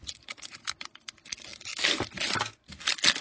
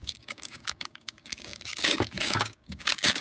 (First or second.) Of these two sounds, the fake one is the second